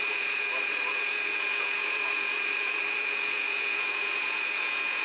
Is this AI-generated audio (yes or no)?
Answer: yes